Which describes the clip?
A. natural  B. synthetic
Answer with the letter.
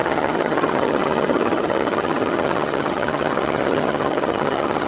B